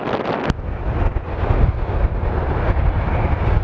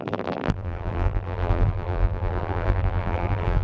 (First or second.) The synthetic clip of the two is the second